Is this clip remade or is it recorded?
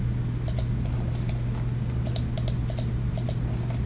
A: recorded